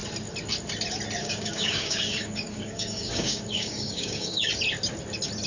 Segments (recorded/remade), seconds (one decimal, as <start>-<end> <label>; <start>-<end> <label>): 0.0-1.2 recorded; 1.2-4.5 remade; 4.5-5.5 recorded